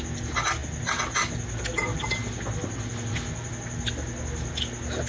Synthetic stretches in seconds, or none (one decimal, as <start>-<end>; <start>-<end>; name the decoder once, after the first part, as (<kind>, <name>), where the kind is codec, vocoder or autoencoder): none